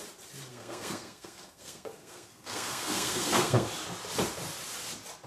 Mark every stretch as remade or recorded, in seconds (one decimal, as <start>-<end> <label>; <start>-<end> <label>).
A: 0.0-0.5 recorded; 0.5-3.7 remade; 3.7-5.3 recorded